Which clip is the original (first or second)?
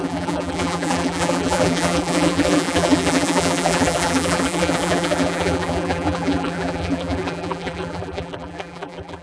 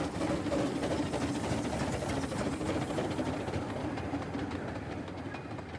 second